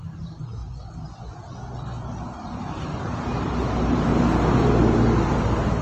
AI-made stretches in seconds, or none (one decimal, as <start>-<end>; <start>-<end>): 0.0-0.6; 3.4-4.1; 5.3-5.8